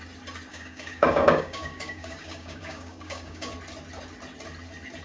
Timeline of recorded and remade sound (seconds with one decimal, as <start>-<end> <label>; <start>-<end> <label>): 0.0-0.5 recorded; 0.5-3.5 remade; 3.5-5.0 recorded